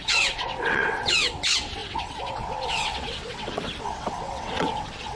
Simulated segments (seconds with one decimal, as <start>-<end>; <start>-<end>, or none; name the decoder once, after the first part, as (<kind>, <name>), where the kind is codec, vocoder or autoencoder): 0.0-5.2 (vocoder, WaveNeXt)